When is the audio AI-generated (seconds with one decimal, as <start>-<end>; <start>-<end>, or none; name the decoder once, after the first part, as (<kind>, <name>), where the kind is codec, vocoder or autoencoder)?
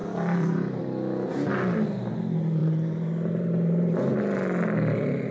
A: 0.0-0.8 (vocoder, BigVGAN v2); 2.6-4.2